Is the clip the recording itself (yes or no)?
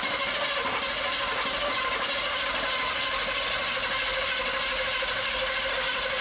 yes